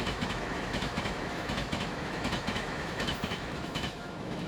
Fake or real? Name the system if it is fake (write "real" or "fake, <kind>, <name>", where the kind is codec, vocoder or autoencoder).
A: fake, autoencoder, DAC-VAE